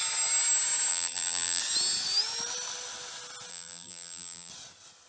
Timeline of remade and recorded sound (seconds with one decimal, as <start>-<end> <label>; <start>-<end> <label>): 0.0-0.9 recorded; 0.9-1.6 remade; 1.6-3.5 recorded; 3.5-4.5 remade; 4.5-5.1 recorded